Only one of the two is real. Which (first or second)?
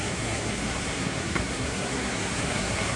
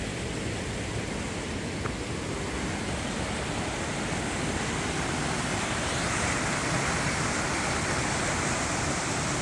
second